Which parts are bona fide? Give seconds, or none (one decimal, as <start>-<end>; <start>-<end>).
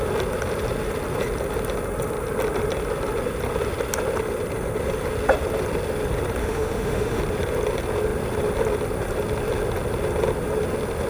0.0-6.4; 7.2-11.1